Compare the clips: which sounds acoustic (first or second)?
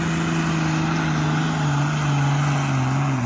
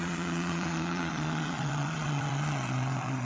first